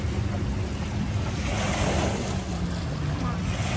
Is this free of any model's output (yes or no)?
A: yes